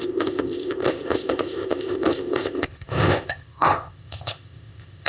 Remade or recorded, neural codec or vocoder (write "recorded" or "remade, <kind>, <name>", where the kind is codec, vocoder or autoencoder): remade, codec, ZipCodec